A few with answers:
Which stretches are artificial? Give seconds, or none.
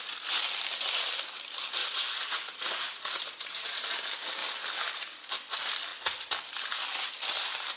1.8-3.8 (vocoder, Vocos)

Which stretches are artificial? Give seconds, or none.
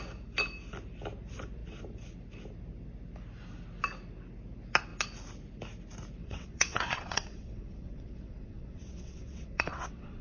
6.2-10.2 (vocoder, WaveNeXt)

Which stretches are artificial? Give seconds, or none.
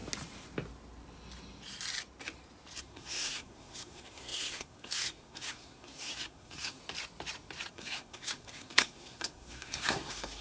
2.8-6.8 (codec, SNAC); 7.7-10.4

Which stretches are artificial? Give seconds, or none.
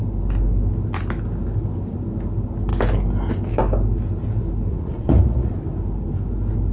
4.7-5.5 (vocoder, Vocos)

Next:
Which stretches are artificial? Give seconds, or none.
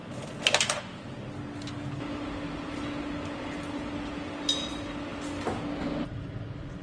none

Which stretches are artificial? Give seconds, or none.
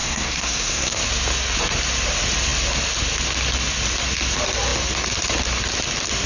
0.0-1.0 (codec, SNAC)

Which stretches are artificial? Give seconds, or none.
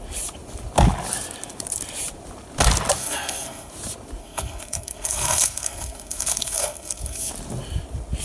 3.0-3.7 (codec, SNAC); 4.2-7.3